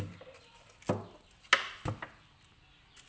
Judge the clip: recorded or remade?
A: recorded